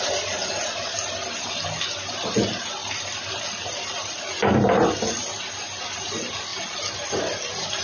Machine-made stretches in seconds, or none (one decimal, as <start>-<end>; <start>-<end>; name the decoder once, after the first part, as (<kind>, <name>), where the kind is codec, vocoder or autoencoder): none